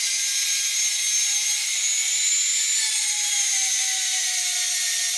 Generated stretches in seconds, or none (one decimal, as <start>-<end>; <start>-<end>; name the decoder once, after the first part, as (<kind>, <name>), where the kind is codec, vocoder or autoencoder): none